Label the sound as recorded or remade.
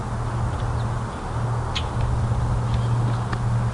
recorded